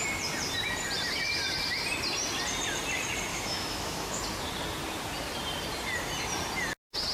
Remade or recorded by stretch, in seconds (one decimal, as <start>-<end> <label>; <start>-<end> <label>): 0.0-3.3 recorded; 3.3-4.2 remade; 4.2-7.1 recorded